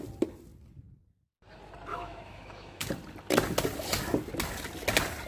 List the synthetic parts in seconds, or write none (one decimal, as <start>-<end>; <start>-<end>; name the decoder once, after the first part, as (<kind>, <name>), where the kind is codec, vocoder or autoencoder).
1.9-2.9 (autoencoder, DAC-VAE)